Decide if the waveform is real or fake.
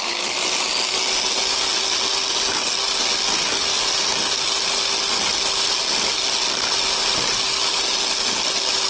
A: real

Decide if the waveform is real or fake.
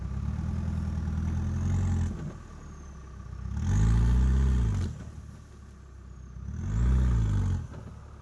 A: real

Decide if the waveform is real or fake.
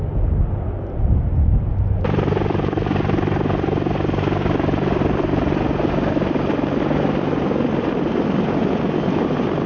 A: real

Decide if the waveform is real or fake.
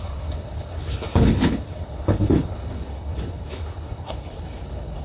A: fake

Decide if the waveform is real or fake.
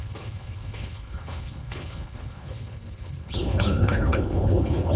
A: fake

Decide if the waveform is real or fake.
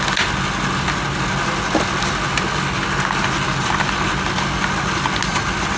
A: real